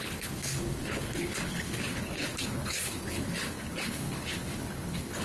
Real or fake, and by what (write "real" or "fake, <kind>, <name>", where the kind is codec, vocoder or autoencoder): fake, codec, HILCodec